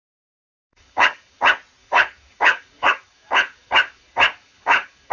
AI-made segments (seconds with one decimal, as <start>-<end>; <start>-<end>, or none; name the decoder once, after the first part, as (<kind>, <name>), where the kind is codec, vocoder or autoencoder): 0.7-1.4 (codec, DAC); 1.8-5.1